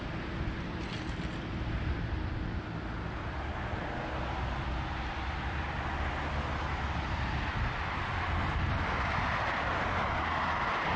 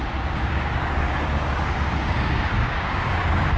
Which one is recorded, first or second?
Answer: first